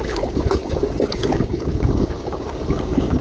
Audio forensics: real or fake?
fake